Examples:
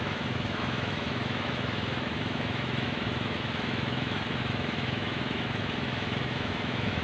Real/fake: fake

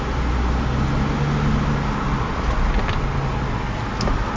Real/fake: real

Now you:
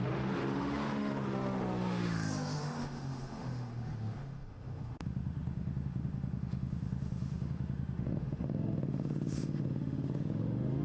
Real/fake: fake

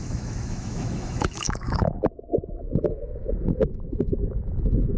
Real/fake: fake